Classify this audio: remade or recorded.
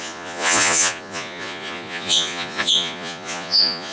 remade